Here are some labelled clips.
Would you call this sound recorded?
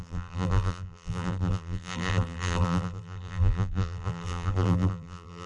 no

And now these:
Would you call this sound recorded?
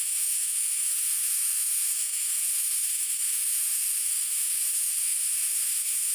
no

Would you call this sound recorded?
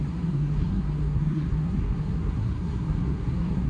no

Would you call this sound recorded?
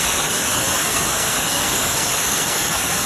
no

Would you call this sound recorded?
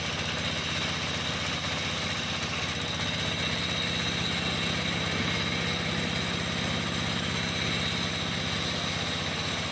yes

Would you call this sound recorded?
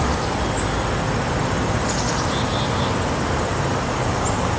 yes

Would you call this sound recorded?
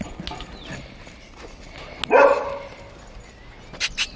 yes